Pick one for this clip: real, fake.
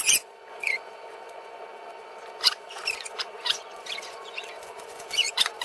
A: fake